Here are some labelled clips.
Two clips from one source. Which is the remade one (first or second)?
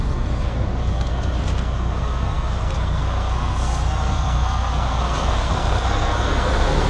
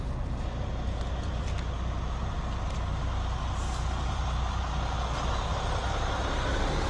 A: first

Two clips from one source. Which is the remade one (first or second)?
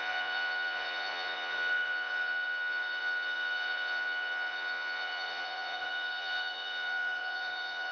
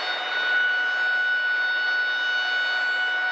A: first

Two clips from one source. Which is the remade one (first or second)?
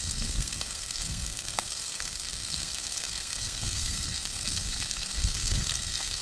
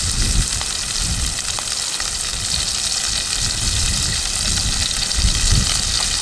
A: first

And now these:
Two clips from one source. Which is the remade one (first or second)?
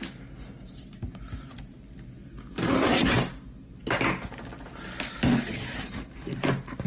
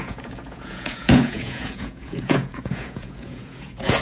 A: second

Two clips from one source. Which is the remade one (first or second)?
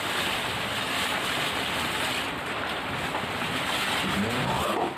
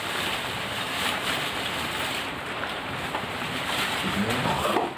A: second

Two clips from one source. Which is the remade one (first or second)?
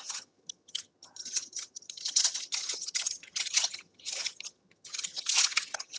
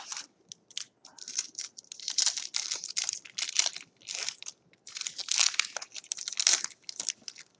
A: first